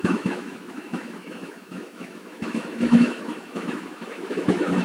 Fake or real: fake